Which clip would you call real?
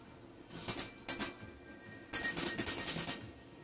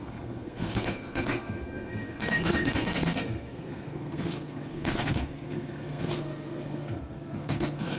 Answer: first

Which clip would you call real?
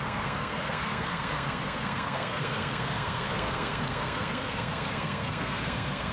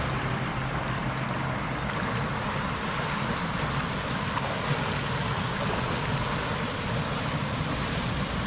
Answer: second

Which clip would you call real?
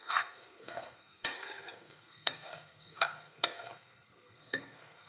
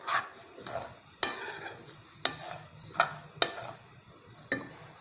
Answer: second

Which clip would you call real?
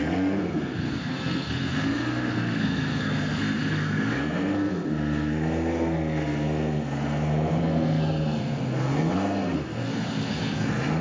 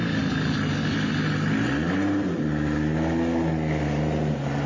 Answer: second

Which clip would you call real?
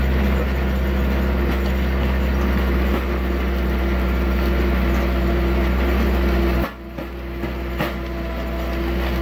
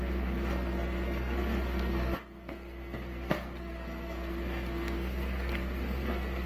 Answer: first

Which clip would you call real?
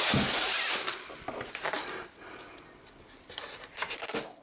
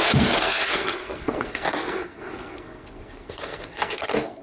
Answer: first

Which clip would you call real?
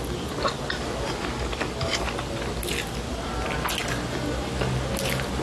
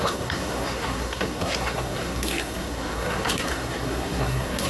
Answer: first